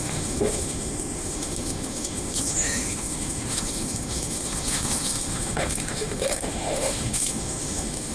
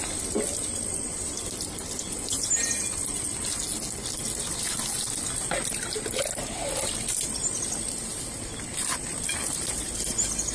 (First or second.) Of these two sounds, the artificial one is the first